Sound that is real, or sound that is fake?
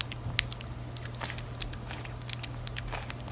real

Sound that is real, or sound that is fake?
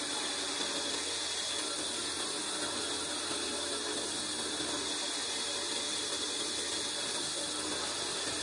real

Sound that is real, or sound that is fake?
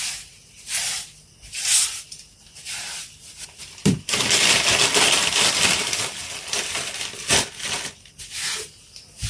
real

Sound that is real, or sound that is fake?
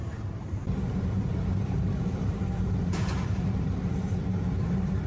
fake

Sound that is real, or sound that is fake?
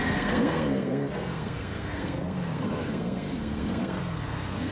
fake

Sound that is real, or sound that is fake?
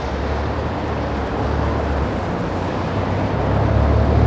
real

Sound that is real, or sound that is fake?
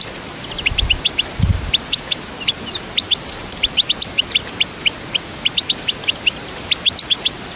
real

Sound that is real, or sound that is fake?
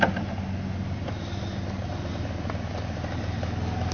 real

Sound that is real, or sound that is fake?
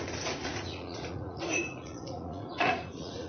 fake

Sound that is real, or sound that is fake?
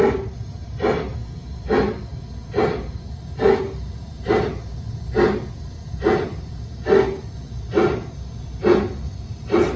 real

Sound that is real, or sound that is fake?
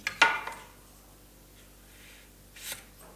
real